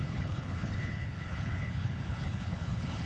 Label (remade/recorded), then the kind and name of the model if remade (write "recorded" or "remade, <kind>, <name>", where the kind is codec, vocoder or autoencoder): remade, codec, HILCodec